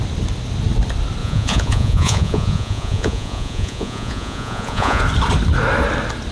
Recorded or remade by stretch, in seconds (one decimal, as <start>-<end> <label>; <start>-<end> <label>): 0.0-1.2 recorded; 1.2-5.0 remade; 5.0-6.3 recorded